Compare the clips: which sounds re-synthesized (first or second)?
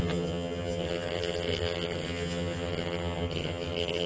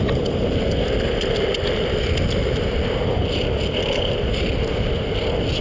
first